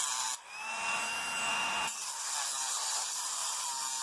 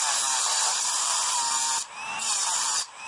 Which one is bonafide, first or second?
first